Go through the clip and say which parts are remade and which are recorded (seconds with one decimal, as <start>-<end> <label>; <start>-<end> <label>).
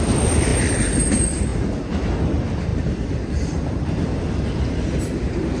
0.0-0.5 remade; 0.5-1.1 recorded; 1.1-1.5 remade; 1.5-2.2 recorded; 2.2-5.6 remade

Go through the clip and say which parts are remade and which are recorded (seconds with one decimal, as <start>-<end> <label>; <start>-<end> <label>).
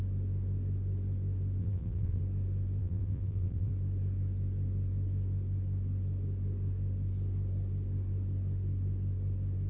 0.0-1.6 recorded; 1.6-2.2 remade; 2.2-2.8 recorded; 2.8-3.7 remade; 3.7-9.7 recorded